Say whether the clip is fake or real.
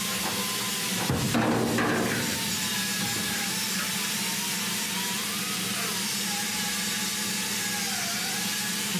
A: real